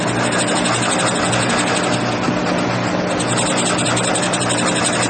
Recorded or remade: recorded